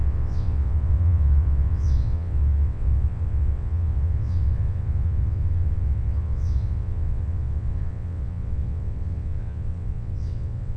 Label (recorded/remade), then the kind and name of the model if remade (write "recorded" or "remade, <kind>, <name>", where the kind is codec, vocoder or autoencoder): remade, vocoder, WaveNeXt